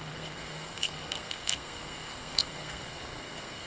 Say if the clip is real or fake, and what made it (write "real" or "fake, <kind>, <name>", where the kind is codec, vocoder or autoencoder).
fake, codec, SNAC